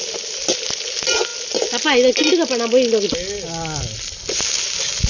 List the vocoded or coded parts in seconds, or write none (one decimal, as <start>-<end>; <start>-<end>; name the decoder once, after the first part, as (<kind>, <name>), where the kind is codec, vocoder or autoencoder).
none